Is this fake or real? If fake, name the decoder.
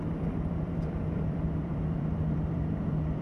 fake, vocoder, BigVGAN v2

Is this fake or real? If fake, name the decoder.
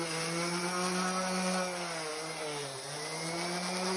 real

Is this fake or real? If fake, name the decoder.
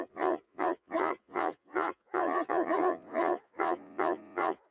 fake, vocoder, Vocos